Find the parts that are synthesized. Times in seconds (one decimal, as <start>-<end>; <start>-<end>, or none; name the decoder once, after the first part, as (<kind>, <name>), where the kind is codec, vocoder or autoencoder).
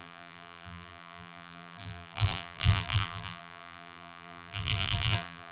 0.0-5.5 (vocoder, BigVGAN v2)